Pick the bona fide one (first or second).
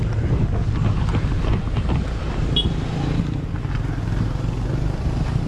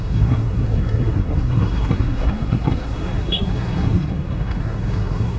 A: first